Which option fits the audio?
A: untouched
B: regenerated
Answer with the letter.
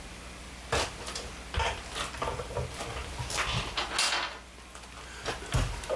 A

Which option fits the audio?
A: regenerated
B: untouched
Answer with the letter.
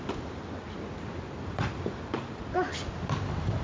A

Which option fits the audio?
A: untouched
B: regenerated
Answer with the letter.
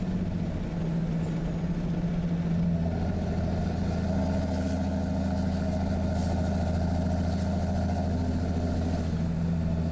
A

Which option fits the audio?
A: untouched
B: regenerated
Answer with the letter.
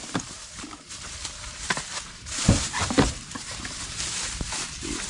B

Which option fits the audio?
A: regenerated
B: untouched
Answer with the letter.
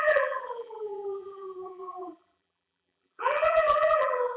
A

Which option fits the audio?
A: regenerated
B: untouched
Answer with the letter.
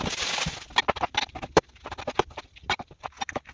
B